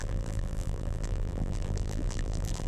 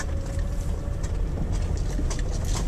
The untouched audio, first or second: second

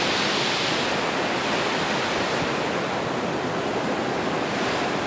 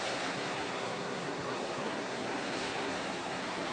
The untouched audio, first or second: first